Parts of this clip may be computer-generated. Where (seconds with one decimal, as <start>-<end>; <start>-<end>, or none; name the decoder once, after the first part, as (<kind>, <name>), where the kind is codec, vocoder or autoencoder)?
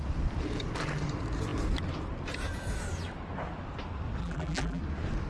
4.2-4.8 (vocoder, BigVGAN v2)